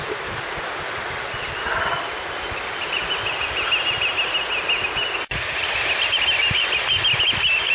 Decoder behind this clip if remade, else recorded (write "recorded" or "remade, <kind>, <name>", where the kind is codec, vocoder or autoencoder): recorded